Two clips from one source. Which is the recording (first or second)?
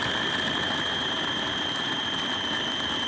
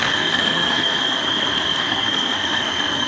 first